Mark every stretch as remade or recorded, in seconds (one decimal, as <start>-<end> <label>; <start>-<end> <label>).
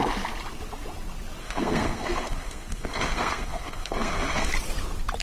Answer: 0.0-1.4 recorded; 1.4-4.5 remade; 4.5-5.2 recorded